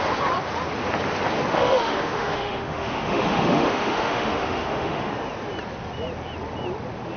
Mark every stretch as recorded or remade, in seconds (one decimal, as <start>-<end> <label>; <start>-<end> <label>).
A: 0.0-1.5 recorded; 1.5-5.1 remade; 5.1-7.2 recorded